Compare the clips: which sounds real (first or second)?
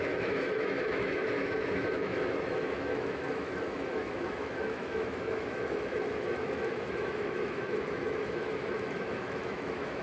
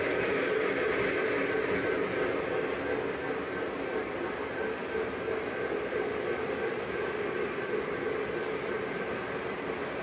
second